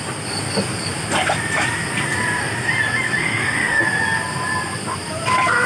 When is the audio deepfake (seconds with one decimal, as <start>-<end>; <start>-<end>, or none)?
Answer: 3.2-3.8